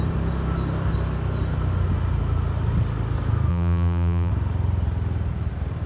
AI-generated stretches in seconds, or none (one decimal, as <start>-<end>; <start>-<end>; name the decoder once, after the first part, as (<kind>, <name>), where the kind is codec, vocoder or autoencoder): 3.5-4.3 (vocoder, BigVGAN v2)